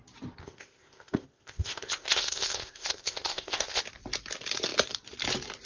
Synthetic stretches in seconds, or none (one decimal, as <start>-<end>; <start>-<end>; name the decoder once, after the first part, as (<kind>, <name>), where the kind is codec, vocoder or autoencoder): 0.4-3.8 (codec, ZipCodec)